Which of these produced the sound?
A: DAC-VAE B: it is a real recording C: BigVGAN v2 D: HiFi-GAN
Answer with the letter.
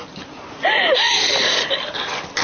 C